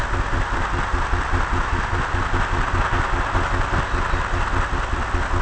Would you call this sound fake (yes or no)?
no